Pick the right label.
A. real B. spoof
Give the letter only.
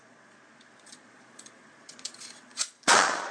B